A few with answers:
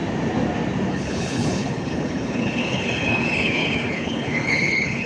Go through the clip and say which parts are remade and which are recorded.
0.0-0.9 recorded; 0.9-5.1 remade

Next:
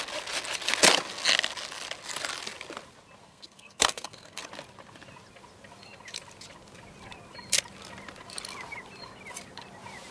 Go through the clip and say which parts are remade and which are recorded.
0.0-3.2 recorded; 3.2-4.4 remade; 4.4-10.1 recorded